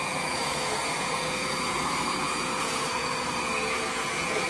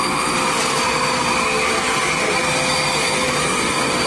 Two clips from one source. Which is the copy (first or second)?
first